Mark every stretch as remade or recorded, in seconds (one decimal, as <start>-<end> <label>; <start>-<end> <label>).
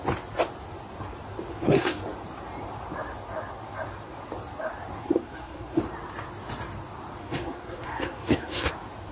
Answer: 0.0-1.5 recorded; 1.5-2.0 remade; 2.0-5.0 recorded; 5.0-5.8 remade; 5.8-7.2 recorded; 7.2-8.7 remade; 8.7-9.1 recorded